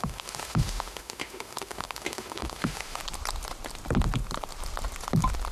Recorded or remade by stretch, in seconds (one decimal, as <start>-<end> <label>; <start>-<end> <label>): 0.0-3.0 remade; 3.0-5.5 recorded